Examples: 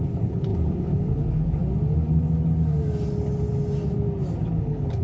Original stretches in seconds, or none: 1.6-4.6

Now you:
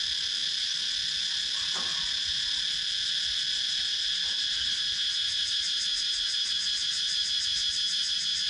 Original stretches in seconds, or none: 0.0-8.5

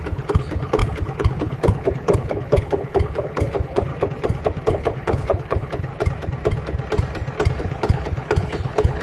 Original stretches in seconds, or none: 3.9-4.7; 5.9-7.6

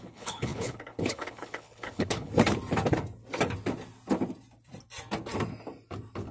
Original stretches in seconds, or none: 2.3-6.3